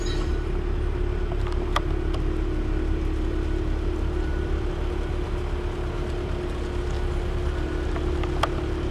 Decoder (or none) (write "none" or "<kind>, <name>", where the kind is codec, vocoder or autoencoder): none